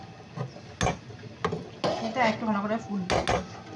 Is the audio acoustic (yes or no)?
yes